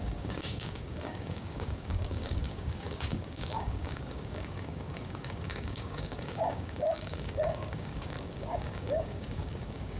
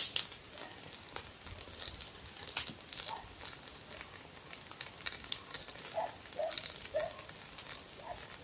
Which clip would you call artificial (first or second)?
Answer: first